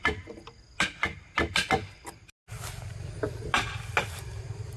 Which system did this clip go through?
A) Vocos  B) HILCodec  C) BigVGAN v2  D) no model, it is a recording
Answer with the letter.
D